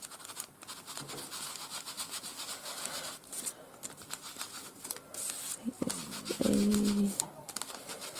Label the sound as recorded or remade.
recorded